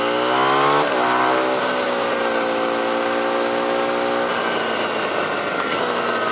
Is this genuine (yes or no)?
yes